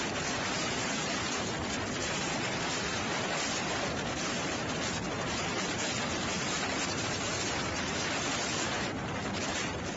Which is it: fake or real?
fake